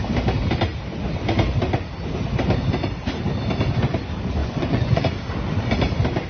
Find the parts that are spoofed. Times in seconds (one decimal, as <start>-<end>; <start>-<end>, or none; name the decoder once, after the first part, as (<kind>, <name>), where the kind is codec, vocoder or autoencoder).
4.4-5.0 (vocoder, Vocos)